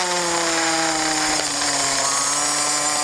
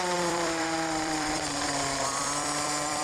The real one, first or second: first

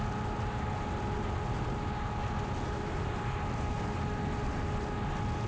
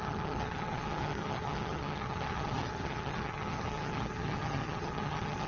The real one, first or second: first